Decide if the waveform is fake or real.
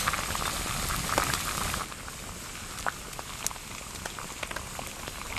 real